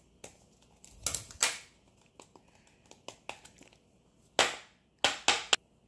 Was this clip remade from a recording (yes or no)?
no